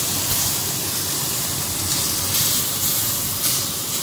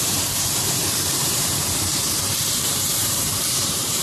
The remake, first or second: second